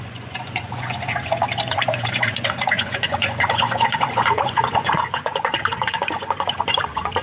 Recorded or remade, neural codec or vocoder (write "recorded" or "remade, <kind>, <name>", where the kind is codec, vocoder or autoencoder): remade, vocoder, Vocos